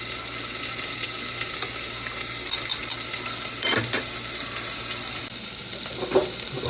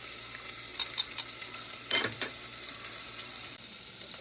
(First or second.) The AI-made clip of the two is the second